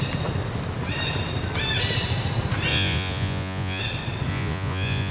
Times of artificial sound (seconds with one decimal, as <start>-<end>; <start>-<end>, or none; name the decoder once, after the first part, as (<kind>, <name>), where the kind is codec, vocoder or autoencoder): 2.7-3.8 (vocoder, Vocos); 4.3-5.1